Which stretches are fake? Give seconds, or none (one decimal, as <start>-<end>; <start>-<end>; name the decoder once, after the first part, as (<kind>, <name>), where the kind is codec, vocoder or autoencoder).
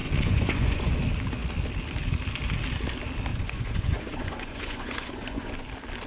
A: 0.0-0.9 (vocoder, Vocos); 3.3-5.5